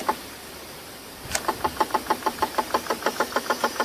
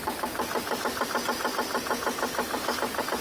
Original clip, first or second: second